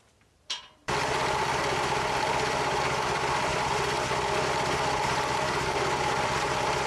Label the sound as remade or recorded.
remade